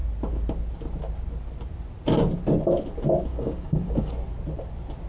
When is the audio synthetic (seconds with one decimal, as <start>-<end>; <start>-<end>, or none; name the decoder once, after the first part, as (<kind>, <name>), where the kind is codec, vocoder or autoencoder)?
3.3-4.1 (codec, DAC)

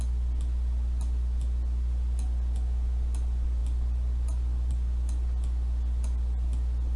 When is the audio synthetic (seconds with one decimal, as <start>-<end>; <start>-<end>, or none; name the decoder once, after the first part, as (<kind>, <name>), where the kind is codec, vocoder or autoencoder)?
none

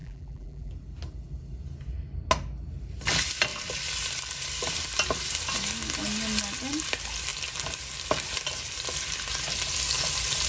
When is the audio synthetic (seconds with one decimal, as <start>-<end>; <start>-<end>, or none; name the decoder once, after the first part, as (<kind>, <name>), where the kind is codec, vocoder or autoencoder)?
0.0-0.7 (vocoder, BigVGAN v2)

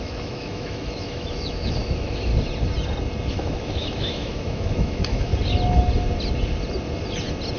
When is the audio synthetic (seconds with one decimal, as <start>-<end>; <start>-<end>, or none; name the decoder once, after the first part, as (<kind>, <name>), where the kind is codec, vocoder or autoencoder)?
0.0-2.3 (autoencoder, DAC-VAE); 3.3-5.3